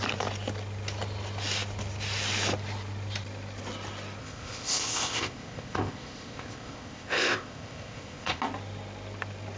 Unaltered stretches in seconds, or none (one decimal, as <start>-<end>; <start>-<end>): 0.0-4.2; 8.4-9.6

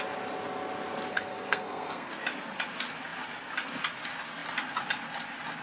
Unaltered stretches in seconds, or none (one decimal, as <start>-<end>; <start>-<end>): 0.0-1.1; 2.1-5.6

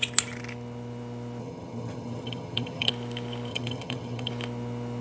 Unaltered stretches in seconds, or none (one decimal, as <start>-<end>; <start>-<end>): 0.0-1.4; 2.9-3.5; 4.3-5.0

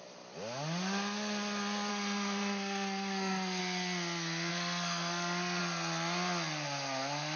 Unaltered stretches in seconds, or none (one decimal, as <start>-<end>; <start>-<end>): 0.0-1.9; 3.6-4.5; 5.6-7.4